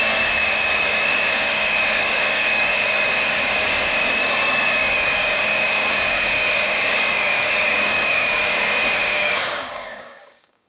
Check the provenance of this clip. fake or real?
fake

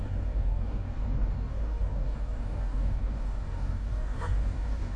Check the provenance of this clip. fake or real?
fake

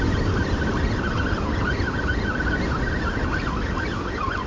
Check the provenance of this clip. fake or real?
real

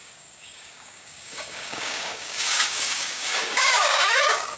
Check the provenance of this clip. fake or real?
fake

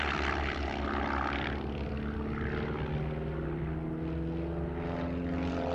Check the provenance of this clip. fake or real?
real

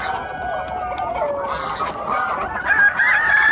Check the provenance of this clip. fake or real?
real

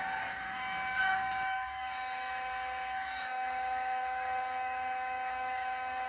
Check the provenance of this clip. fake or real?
fake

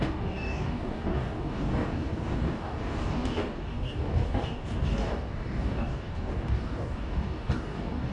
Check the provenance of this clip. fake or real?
fake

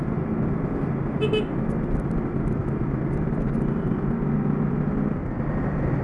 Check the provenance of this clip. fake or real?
real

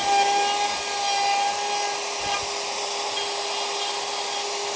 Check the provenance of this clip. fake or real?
real